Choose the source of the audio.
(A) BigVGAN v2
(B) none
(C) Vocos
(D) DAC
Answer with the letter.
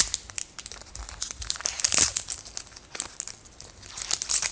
B